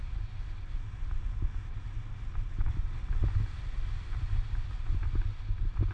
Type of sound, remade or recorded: recorded